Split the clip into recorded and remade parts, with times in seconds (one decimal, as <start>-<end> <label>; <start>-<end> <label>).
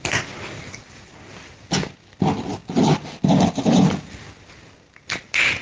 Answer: 0.0-2.6 recorded; 2.6-3.6 remade; 3.6-5.6 recorded